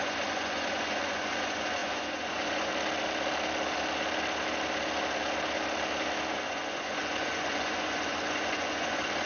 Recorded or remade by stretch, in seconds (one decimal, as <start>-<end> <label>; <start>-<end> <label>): 0.0-2.7 remade; 2.7-6.3 recorded; 6.3-9.3 remade